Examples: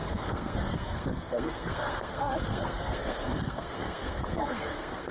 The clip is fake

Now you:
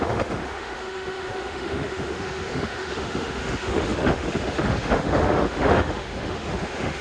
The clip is fake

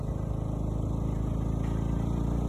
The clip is real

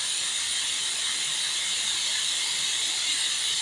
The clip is real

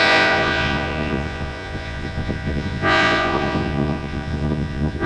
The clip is fake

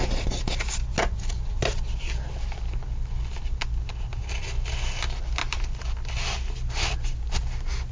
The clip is real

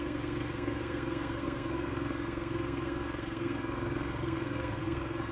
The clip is fake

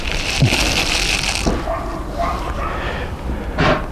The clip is real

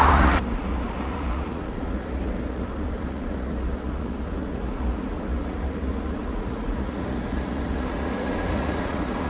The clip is fake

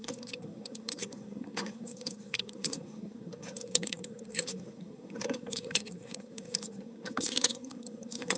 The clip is fake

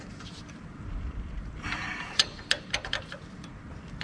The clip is fake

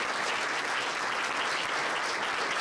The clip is real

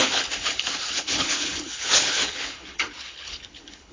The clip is fake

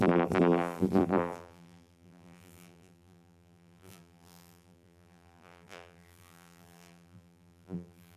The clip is fake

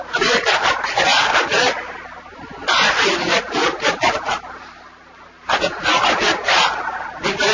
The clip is fake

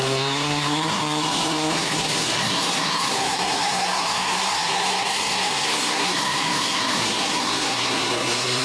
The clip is fake